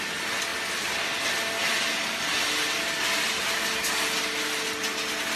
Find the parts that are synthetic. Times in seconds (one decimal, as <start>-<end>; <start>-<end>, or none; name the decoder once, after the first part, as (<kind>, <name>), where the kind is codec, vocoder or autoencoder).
none